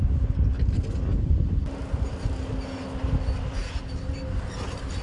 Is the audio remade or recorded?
recorded